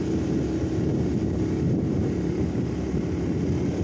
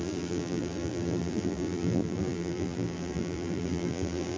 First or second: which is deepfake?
second